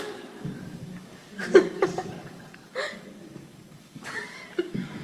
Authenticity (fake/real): fake